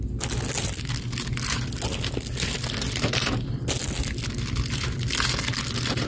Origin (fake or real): real